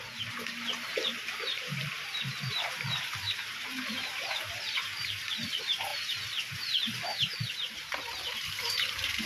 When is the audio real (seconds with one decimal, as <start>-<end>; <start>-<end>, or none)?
none